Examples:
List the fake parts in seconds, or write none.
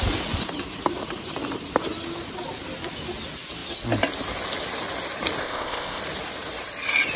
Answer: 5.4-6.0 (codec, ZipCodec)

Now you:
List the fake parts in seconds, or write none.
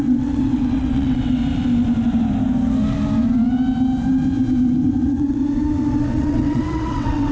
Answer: 0.0-1.4 (vocoder, WaveNeXt); 4.9-5.4; 6.0-7.3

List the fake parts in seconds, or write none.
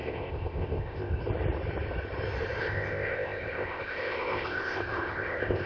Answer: 0.0-1.2 (codec, ZipCodec); 2.6-5.7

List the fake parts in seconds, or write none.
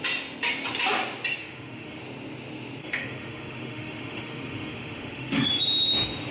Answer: 1.4-2.0 (autoencoder, DAC-VAE); 2.8-5.5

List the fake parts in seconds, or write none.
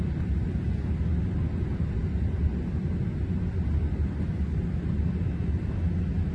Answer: none